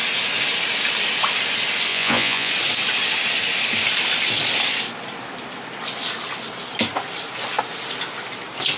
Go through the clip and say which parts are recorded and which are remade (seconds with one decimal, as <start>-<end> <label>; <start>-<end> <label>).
0.0-1.9 recorded; 1.9-2.5 remade; 2.5-8.8 recorded